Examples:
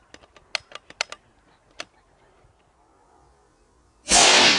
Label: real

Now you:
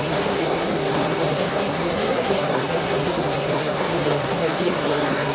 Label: fake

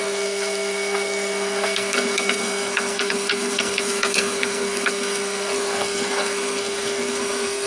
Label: fake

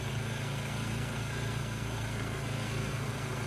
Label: fake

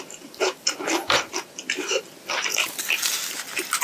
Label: real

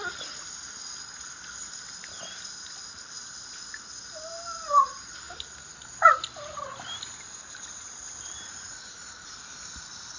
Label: real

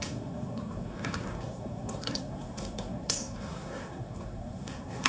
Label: fake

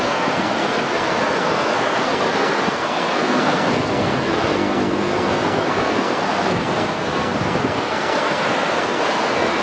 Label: fake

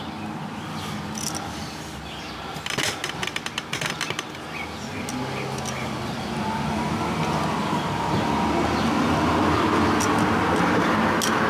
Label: real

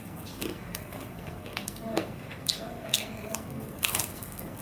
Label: fake